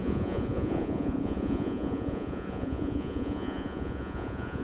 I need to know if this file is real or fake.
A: fake